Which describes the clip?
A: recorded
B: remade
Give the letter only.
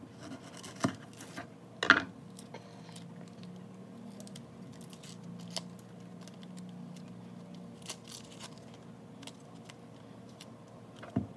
A